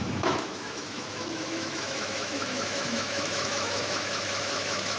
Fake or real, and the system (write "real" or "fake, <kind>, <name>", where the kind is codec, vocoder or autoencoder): fake, autoencoder, DAC-VAE